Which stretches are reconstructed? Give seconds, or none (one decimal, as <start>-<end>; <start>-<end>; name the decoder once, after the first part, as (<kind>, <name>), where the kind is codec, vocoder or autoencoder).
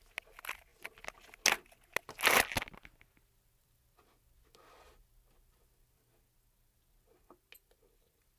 none